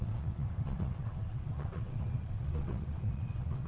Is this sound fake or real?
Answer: fake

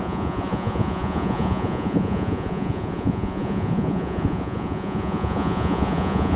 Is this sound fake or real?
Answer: fake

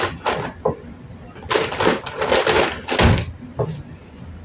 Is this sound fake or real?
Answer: real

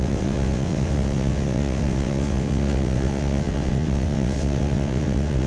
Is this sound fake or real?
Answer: fake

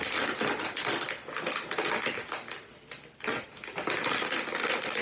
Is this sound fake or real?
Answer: real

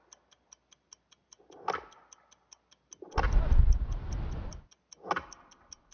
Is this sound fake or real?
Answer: real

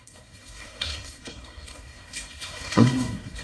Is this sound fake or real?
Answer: fake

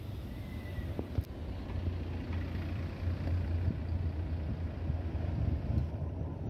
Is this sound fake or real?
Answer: real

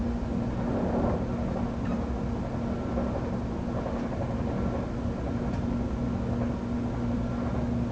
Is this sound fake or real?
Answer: real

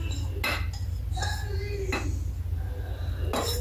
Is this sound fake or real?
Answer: real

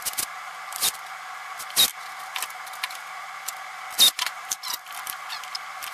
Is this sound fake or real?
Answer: real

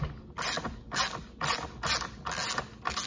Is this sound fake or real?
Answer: real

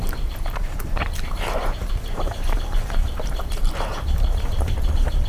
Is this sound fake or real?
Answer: fake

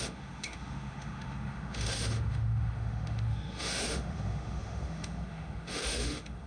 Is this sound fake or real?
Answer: fake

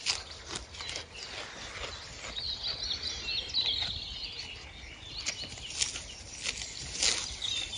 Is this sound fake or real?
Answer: real